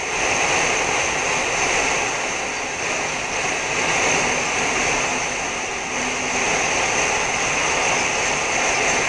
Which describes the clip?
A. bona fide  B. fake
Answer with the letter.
A